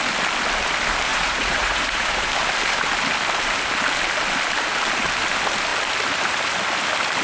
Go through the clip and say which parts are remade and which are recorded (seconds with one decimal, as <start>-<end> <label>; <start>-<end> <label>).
0.0-1.1 recorded; 1.1-2.3 remade; 2.3-7.2 recorded